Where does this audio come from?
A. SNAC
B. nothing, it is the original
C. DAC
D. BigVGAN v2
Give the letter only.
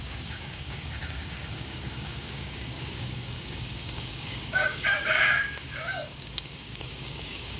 C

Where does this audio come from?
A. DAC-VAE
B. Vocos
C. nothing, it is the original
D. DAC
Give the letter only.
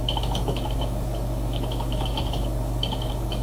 D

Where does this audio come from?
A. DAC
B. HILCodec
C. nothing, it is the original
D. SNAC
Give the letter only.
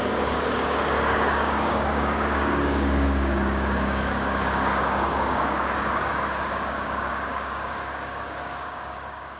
A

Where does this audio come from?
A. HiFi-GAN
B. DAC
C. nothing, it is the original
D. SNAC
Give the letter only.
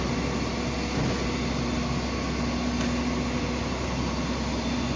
C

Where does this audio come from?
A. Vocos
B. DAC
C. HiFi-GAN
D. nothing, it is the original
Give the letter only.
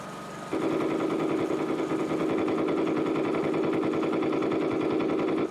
D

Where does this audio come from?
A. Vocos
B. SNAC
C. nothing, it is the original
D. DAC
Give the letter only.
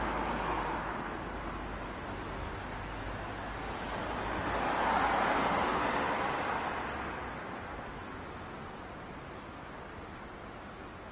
C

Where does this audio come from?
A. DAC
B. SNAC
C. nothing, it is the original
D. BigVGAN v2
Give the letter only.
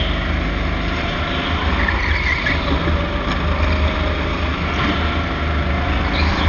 C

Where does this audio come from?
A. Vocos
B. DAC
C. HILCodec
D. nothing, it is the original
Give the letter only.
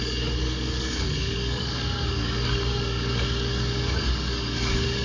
B